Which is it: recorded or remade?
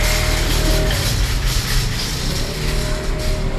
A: recorded